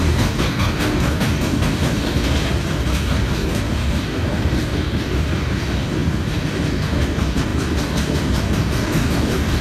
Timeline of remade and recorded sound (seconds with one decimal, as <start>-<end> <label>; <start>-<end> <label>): 0.0-9.6 remade